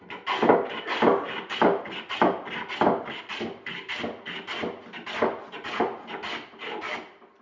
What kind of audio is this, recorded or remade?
recorded